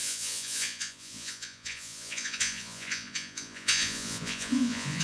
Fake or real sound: fake